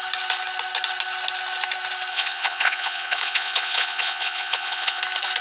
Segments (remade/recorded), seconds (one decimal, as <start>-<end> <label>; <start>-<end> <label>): 0.0-2.1 recorded; 2.1-5.0 remade; 5.0-5.4 recorded